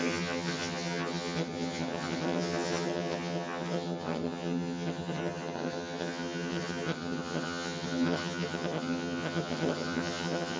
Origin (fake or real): fake